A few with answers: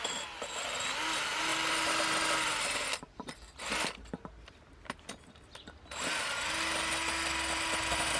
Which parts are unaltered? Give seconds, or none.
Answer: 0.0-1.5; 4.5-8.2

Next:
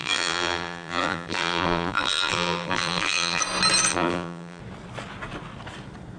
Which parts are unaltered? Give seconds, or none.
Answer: 3.4-3.9; 4.6-6.2

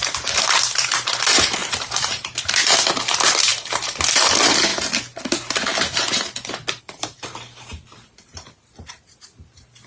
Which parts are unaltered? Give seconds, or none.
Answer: 4.7-6.8

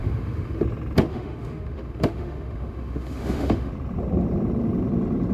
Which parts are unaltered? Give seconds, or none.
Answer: 0.6-1.1; 3.7-5.3

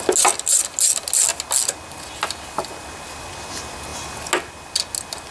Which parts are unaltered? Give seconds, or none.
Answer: 0.0-5.3

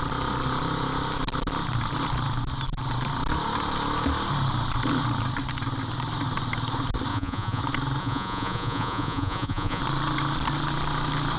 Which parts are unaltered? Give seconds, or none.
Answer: 0.0-7.1; 7.6-8.0; 9.8-11.4

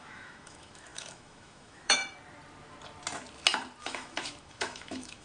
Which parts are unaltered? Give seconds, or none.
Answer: 2.0-3.8

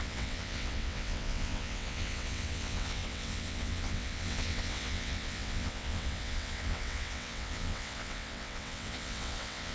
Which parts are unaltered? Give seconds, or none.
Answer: none